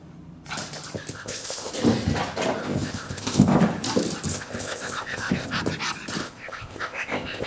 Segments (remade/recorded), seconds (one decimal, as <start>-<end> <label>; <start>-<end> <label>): 0.0-1.1 recorded; 1.1-1.7 remade; 1.7-2.6 recorded; 2.6-3.6 remade; 3.6-4.3 recorded; 4.3-5.6 remade; 5.6-6.2 recorded; 6.2-7.5 remade